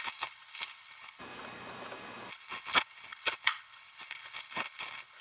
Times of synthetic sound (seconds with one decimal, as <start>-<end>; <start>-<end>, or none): 0.0-1.2; 2.3-5.2